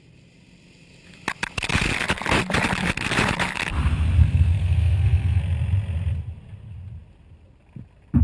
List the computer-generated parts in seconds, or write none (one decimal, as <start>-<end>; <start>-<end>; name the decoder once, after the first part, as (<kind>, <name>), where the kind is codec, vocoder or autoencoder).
4.2-5.4 (codec, SNAC)